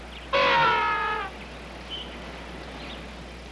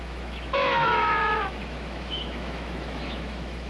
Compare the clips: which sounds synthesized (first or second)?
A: second